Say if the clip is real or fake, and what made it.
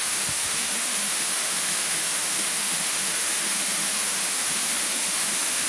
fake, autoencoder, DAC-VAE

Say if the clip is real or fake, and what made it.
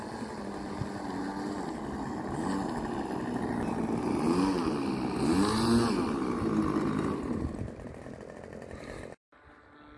real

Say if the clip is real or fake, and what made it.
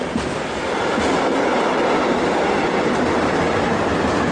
real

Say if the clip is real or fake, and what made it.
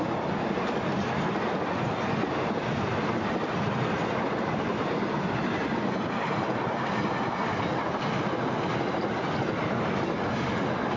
real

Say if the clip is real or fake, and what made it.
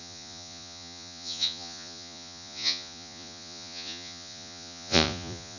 fake, vocoder, Vocos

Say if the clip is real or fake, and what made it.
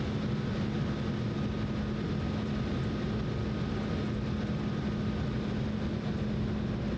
real